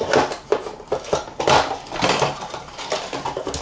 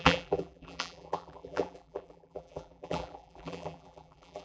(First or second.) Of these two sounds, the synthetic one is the second